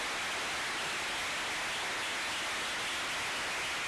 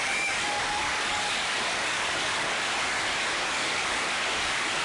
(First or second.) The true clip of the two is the first